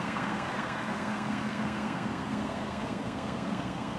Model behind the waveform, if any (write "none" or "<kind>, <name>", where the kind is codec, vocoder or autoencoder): codec, SNAC